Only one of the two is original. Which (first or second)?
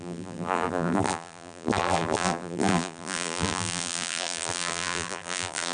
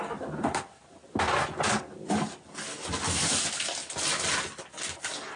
second